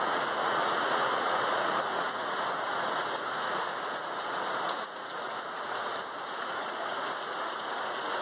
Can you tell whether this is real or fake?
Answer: fake